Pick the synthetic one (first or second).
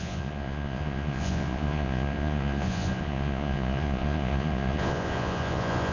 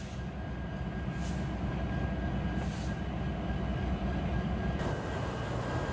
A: first